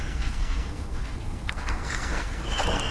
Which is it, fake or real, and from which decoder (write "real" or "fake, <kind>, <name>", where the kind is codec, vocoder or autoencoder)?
fake, codec, SNAC